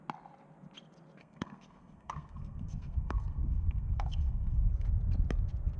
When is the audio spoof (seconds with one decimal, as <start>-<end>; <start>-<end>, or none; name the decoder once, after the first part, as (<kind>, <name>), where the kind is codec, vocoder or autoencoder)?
1.2-4.7 (codec, SNAC)